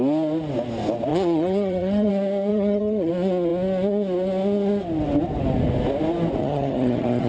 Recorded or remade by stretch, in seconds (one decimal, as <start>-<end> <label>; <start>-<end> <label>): 0.0-1.1 recorded; 1.1-2.1 remade; 2.1-2.5 recorded; 2.5-3.1 remade; 3.1-6.4 recorded; 6.4-7.3 remade